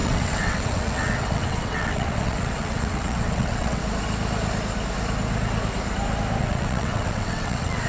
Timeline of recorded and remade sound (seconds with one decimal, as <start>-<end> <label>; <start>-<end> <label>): 0.0-3.8 remade; 3.8-6.4 recorded; 6.4-7.9 remade